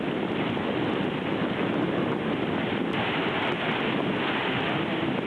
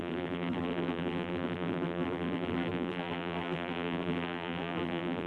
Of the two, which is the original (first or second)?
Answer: first